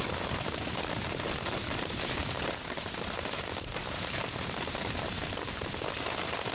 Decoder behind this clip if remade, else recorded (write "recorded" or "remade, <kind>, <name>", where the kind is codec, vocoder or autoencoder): remade, vocoder, BigVGAN v2